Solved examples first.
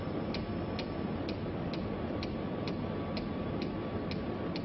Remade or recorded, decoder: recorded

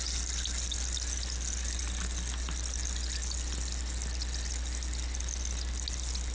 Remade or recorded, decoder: recorded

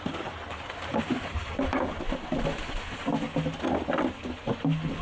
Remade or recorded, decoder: recorded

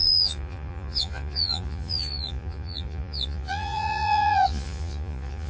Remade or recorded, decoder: remade, vocoder, Vocos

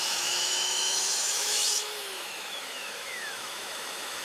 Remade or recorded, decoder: remade, autoencoder, DAC-VAE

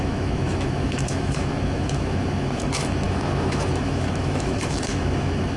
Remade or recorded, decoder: remade, autoencoder, DAC-VAE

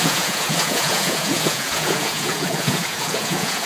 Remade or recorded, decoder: remade, vocoder, Vocos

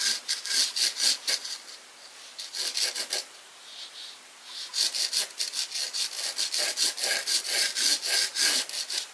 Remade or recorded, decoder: recorded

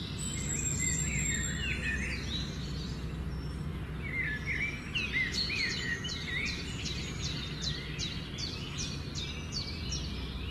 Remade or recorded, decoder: recorded